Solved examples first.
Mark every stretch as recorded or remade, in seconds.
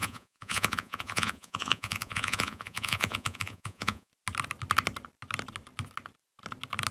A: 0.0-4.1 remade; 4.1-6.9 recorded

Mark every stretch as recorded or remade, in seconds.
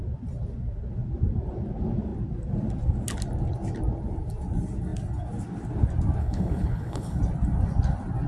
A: 0.0-6.2 recorded; 6.2-7.2 remade; 7.2-8.3 recorded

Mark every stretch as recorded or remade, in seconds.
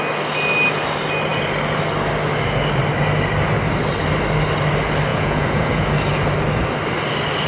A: 0.0-5.1 recorded; 5.1-5.8 remade; 5.8-7.5 recorded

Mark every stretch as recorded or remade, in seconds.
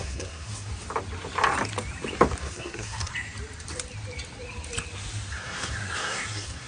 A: 0.0-0.7 remade; 0.7-2.4 recorded; 2.4-3.1 remade; 3.1-5.3 recorded; 5.3-6.7 remade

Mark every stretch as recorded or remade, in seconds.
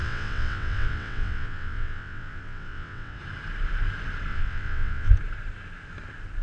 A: 0.0-3.2 remade; 3.2-4.3 recorded; 4.3-5.1 remade; 5.1-6.4 recorded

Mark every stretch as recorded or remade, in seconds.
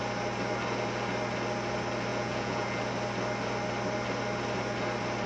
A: 0.0-2.1 recorded; 2.1-2.8 remade; 2.8-5.3 recorded